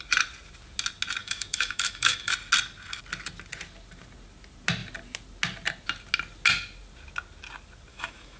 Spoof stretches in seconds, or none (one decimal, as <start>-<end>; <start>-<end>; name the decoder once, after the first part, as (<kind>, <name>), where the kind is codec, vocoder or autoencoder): 1.2-2.3 (autoencoder, DAC-VAE); 7.9-8.4